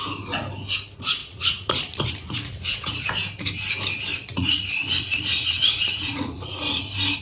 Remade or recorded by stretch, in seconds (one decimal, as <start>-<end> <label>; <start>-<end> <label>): 0.0-1.2 recorded; 1.2-3.1 remade; 3.1-4.1 recorded; 4.1-6.8 remade; 6.8-7.2 recorded